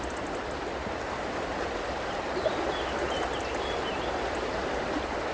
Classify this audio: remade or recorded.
recorded